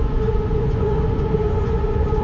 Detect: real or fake fake